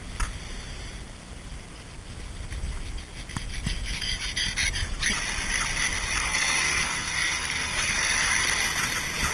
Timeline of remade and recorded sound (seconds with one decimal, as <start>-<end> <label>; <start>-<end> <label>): 0.0-6.2 recorded; 6.2-8.3 remade; 8.3-9.3 recorded